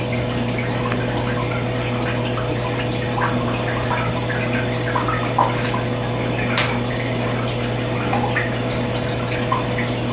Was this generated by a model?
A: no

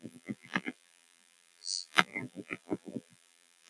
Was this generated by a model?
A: yes